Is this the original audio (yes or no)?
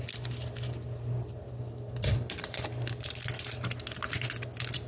yes